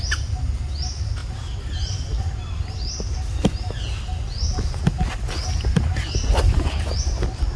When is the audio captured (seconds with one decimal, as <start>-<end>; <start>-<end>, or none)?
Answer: 0.0-7.6